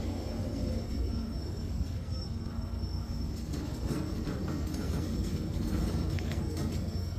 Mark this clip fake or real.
fake